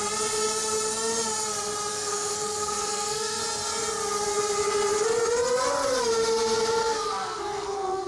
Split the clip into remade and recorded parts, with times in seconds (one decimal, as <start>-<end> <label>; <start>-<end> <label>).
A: 0.0-1.9 recorded; 1.9-3.4 remade; 3.4-6.8 recorded; 6.8-8.1 remade